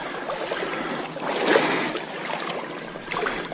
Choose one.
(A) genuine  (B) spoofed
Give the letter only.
A